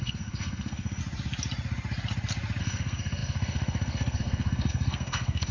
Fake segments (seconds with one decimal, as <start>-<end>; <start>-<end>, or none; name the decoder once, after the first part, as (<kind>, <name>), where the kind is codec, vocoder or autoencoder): 0.0-1.0 (codec, SNAC); 2.6-5.5